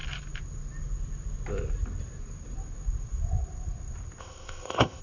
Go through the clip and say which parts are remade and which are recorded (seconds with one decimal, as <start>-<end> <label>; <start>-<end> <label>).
0.0-4.2 recorded; 4.2-5.0 remade